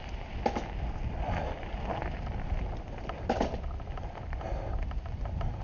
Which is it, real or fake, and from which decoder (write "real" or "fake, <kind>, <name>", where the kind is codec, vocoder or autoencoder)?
real